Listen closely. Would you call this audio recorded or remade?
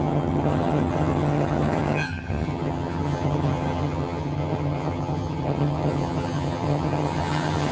remade